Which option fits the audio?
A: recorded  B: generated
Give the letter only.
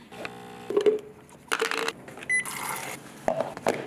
A